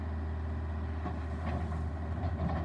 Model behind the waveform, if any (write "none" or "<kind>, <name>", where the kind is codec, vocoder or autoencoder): none